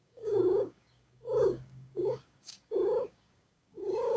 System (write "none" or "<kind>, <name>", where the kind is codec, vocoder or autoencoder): codec, DAC